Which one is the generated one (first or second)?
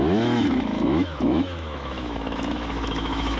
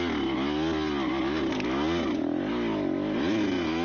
first